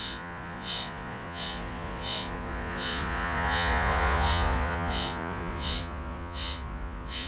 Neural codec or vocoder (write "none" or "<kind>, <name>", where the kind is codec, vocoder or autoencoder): vocoder, Vocos